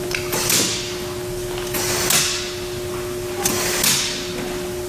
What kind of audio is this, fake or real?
real